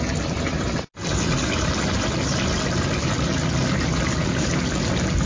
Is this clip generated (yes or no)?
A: no